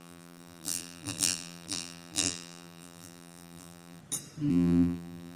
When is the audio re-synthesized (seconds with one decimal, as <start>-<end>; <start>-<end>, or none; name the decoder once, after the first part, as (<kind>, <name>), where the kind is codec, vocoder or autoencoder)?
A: 0.0-4.0 (vocoder, BigVGAN v2); 4.5-5.4